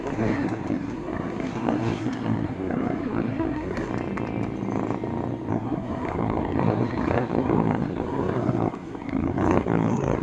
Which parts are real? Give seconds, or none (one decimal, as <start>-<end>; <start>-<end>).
3.9-5.5